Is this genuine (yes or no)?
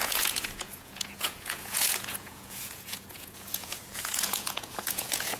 no